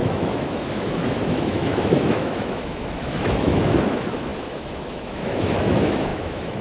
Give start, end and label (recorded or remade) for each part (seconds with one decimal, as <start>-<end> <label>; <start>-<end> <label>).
0.0-6.6 remade